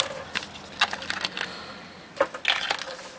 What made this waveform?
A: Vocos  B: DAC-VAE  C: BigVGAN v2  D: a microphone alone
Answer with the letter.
D